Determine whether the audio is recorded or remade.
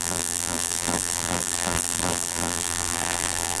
remade